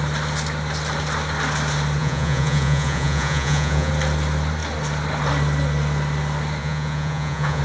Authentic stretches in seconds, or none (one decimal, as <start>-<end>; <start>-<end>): 0.0-2.0; 3.9-6.6